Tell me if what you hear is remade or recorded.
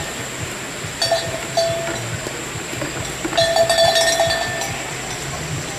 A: recorded